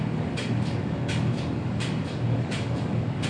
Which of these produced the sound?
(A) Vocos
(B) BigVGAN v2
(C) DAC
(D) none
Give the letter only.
C